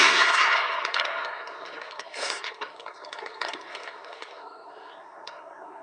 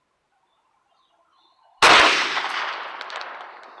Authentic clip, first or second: second